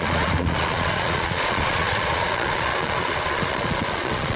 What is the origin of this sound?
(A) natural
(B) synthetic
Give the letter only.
B